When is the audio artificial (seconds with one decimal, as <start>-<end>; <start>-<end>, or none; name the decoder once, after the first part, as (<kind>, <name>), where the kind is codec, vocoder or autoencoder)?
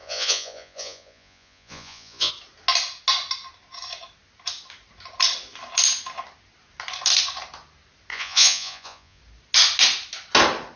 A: 0.0-2.3 (vocoder, Vocos); 8.1-9.2